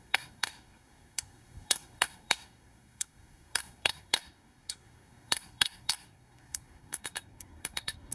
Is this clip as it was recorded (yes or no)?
no